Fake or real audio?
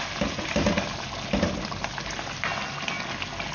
real